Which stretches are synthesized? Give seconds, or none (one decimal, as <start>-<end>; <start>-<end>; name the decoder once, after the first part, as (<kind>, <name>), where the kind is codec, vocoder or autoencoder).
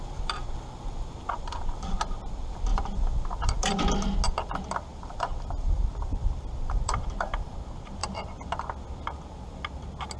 2.7-3.8 (vocoder, BigVGAN v2); 4.9-7.5; 8.0-8.5